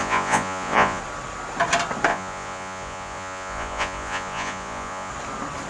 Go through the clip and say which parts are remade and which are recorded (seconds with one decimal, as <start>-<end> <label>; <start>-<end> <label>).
0.0-1.0 remade; 1.0-2.1 recorded; 2.1-5.1 remade; 5.1-5.7 recorded